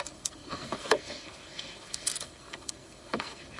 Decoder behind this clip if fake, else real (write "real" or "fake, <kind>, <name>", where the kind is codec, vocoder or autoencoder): fake, codec, SNAC